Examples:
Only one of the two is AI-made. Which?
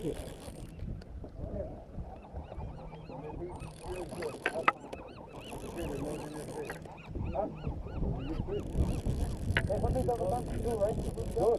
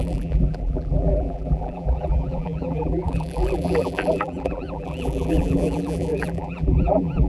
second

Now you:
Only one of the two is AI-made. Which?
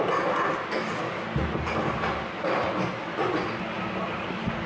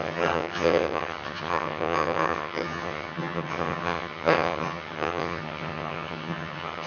second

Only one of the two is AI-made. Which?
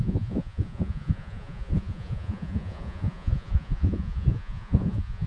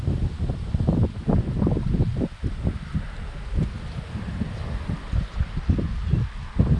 first